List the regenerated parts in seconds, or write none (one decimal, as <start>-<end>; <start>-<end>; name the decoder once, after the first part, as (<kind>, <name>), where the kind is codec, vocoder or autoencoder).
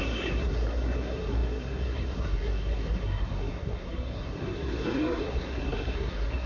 0.0-6.5 (codec, SNAC)